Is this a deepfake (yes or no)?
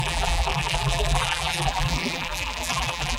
yes